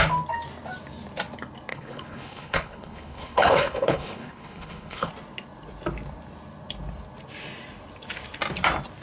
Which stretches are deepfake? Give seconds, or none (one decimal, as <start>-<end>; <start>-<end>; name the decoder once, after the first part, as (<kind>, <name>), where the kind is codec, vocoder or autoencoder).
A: 1.7-5.1 (codec, HILCodec)